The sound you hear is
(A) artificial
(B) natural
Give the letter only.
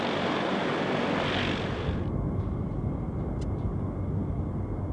B